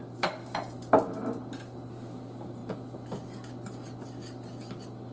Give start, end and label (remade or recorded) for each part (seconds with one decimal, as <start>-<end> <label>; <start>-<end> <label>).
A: 0.0-5.1 recorded